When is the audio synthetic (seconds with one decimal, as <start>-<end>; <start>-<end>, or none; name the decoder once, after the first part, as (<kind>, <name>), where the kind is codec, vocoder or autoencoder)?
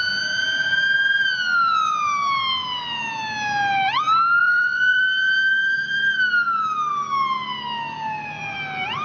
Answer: 4.4-5.0 (vocoder, Vocos)